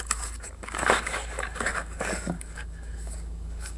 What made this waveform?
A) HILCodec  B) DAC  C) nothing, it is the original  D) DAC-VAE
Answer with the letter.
B